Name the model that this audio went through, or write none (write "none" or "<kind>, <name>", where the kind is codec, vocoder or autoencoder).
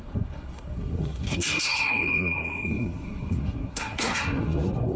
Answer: codec, SNAC